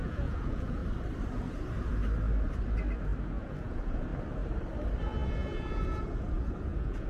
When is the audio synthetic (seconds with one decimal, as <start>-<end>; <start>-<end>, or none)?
0.0-0.8; 3.2-4.1; 5.3-7.1